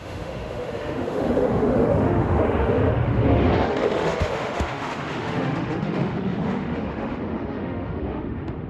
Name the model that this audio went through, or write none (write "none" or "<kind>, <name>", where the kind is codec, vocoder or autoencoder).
autoencoder, DAC-VAE